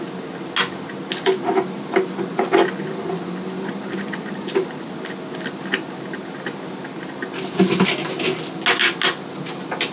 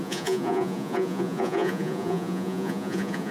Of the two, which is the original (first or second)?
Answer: first